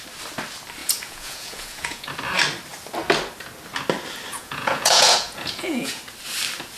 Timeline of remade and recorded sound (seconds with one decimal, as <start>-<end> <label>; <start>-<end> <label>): 0.0-0.8 recorded; 0.8-2.1 remade; 2.1-4.3 recorded; 4.3-6.0 remade; 6.0-6.8 recorded